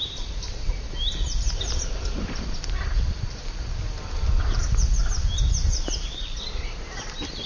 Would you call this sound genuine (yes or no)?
yes